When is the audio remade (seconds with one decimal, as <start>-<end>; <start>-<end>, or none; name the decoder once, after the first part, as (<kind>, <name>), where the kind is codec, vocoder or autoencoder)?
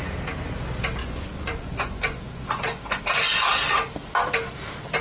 1.0-3.0 (vocoder, Vocos)